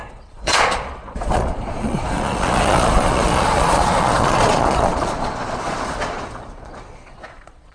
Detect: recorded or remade remade